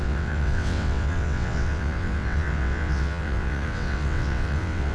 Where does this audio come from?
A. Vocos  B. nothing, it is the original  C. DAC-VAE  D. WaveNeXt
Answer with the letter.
D